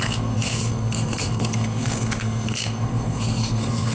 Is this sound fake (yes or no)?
yes